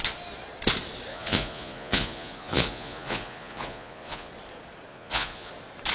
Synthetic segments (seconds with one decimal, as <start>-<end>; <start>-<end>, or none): 1.1-4.3; 4.9-5.5

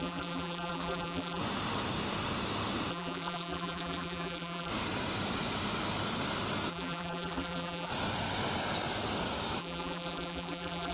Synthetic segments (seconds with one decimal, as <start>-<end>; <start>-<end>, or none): 0.0-1.4; 2.9-4.7; 6.7-7.9; 9.6-10.9

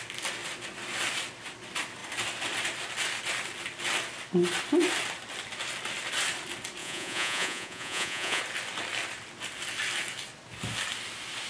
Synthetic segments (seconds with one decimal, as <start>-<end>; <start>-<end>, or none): 6.8-8.4

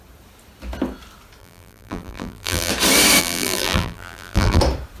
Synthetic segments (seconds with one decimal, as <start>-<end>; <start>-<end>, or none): 1.4-2.7; 3.2-4.6

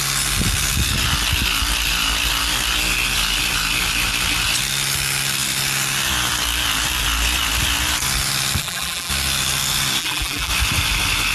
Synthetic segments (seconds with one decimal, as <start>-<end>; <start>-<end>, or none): 8.6-9.1; 10.0-10.5

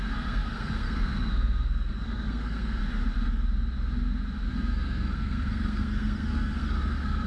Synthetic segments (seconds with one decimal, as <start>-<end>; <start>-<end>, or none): 0.0-2.8; 4.5-7.3

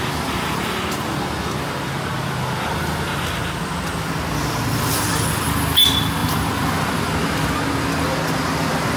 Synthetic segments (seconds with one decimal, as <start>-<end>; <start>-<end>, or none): 6.2-6.9

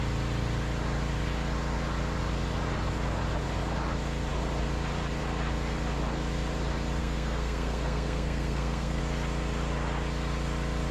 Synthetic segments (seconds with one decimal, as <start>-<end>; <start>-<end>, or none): 7.0-9.0